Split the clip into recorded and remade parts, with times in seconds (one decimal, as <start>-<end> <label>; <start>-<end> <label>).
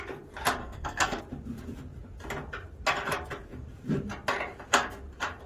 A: 0.0-0.6 recorded; 0.6-1.2 remade; 1.2-5.5 recorded